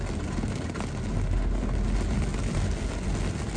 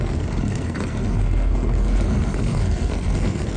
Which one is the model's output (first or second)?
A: second